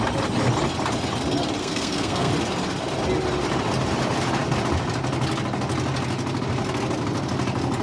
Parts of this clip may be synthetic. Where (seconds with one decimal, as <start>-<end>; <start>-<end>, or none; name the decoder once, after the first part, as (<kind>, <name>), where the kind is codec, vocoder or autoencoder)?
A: 1.6-2.3 (codec, SNAC)